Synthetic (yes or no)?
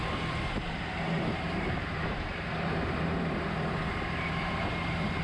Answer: yes